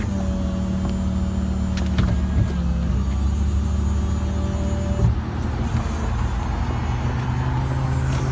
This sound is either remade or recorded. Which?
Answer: recorded